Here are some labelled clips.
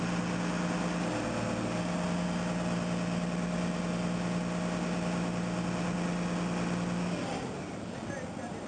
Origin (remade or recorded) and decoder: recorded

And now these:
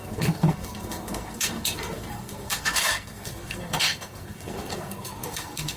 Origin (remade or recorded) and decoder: remade, codec, SNAC